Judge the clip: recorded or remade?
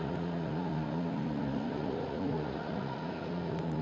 remade